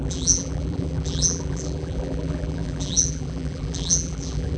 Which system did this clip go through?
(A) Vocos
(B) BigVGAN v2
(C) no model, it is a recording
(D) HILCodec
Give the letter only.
B